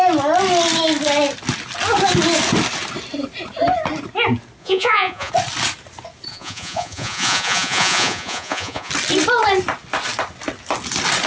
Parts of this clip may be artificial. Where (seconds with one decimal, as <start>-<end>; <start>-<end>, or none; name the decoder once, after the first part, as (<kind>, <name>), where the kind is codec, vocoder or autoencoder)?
4.6-5.3 (vocoder, Vocos); 6.3-8.9